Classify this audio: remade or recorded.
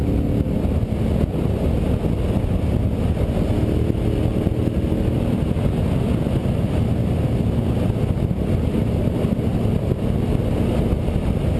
recorded